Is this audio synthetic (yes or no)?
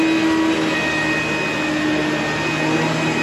no